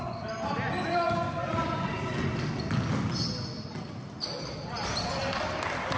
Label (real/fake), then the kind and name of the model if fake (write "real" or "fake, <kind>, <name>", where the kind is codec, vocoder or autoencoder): real